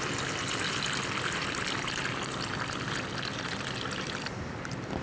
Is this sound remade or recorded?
recorded